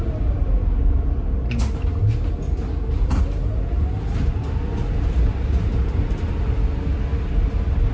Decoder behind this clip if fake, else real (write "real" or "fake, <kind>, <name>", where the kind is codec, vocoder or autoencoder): real